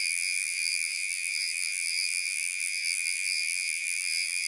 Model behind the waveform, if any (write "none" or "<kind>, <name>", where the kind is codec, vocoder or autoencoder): vocoder, BigVGAN v2